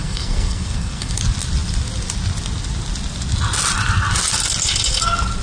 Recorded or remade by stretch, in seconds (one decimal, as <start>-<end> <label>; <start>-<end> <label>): 0.0-1.2 remade; 1.2-5.4 recorded